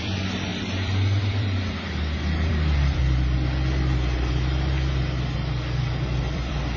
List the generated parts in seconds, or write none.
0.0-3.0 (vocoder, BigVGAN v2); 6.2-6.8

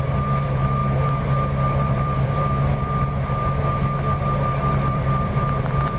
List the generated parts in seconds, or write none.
0.0-0.8 (vocoder, BigVGAN v2); 1.8-3.1; 4.9-6.0

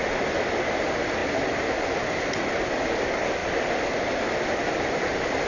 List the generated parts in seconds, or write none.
none

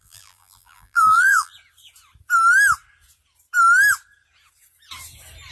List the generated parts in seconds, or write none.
0.0-1.5 (vocoder, BigVGAN v2)

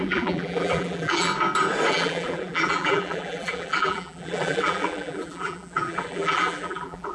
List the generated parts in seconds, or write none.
0.0-1.3 (vocoder, BigVGAN v2); 1.9-7.1

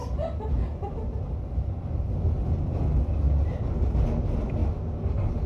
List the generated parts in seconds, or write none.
0.0-1.5 (vocoder, BigVGAN v2)

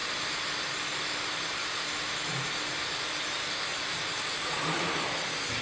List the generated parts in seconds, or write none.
3.7-4.8 (vocoder, BigVGAN v2)

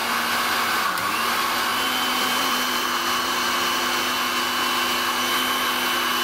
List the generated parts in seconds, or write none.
1.7-3.8 (vocoder, BigVGAN v2)